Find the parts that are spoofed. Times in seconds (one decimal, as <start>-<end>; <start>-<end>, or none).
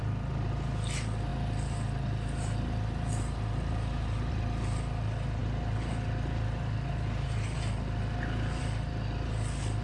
none